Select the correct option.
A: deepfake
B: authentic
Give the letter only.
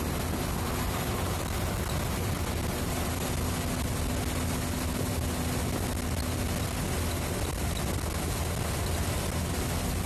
B